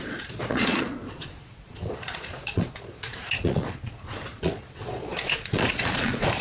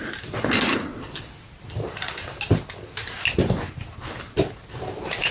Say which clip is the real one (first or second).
second